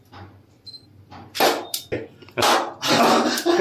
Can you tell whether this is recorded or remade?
recorded